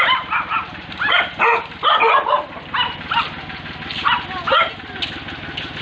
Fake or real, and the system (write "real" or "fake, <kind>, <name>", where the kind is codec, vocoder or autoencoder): real